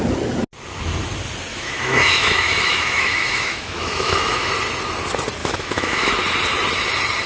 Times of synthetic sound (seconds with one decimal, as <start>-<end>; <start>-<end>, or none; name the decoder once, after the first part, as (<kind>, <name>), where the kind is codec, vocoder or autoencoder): 1.5-4.5 (autoencoder, DAC-VAE); 5.4-6.1